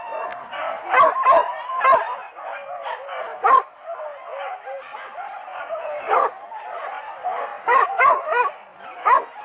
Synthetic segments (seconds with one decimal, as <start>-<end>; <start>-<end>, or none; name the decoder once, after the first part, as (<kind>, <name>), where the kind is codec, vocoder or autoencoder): 7.5-8.2 (vocoder, BigVGAN v2)